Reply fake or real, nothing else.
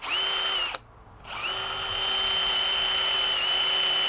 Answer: real